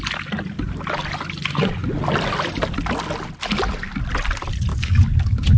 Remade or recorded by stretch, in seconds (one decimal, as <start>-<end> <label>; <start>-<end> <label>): 0.0-4.7 recorded; 4.7-5.6 remade